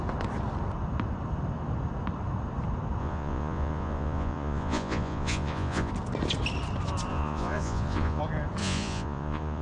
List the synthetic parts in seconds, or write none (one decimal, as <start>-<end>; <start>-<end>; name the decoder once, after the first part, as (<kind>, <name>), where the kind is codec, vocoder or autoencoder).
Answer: 3.0-5.9 (vocoder, Vocos); 7.1-8.2; 8.6-9.6